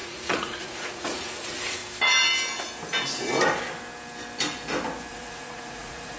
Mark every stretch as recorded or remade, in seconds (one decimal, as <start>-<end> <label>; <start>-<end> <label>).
0.0-1.8 remade; 1.8-5.1 recorded; 5.1-6.2 remade